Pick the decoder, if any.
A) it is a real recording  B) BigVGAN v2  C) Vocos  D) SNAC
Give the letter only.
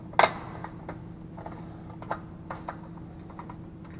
A